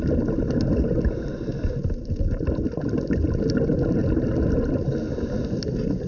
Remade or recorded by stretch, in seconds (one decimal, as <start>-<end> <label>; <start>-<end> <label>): 0.0-6.1 recorded